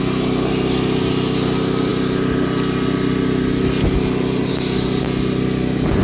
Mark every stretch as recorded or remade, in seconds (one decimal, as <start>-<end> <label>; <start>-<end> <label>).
0.0-6.0 recorded